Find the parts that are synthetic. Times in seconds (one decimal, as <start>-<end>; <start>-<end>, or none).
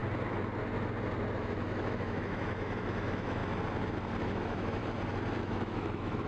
1.4-3.4; 4.2-4.8; 5.4-6.3